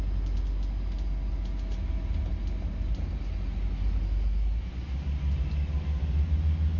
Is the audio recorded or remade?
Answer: recorded